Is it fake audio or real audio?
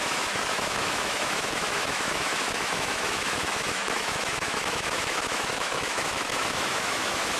fake